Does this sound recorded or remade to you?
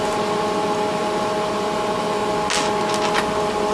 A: recorded